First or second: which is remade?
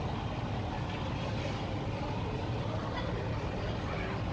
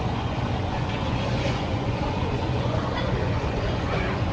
second